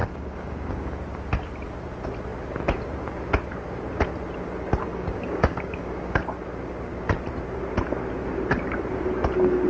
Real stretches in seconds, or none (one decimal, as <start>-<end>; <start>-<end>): 0.9-4.9; 6.2-9.7